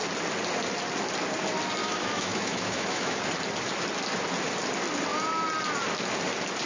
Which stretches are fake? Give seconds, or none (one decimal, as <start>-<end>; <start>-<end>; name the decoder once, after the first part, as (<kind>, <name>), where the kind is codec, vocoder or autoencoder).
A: 1.8-3.2 (autoencoder, DAC-VAE)